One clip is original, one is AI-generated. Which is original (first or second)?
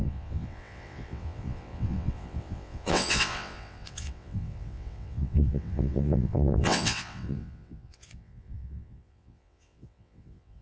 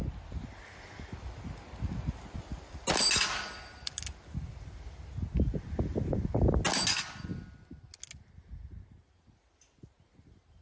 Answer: second